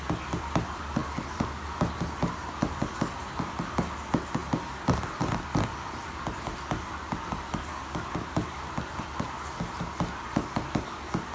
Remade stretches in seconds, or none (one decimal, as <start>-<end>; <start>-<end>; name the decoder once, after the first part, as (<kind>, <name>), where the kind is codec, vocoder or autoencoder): none